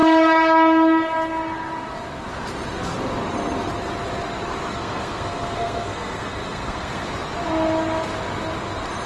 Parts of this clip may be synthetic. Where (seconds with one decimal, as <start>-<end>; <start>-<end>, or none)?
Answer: 4.7-7.1

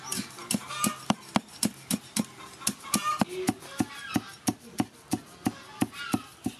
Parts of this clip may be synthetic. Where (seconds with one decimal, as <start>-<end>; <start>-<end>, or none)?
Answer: none

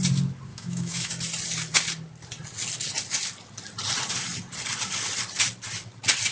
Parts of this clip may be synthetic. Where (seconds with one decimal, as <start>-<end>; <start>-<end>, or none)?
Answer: 0.5-1.1

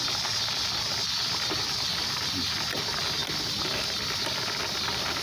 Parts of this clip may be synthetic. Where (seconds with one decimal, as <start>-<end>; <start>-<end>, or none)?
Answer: 1.9-2.7

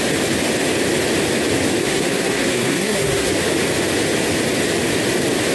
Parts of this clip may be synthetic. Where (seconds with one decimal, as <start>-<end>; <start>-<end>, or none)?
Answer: 1.8-3.3

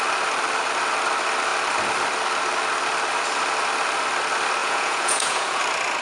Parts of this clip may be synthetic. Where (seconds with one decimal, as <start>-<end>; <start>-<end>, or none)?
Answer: 4.6-5.6

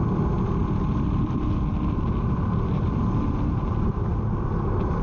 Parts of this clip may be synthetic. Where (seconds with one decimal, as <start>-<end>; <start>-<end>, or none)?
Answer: none

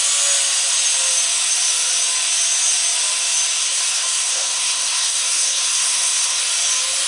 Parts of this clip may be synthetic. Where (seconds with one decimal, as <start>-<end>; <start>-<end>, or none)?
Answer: 3.6-6.4